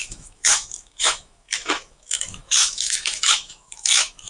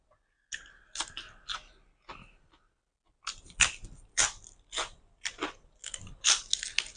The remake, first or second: first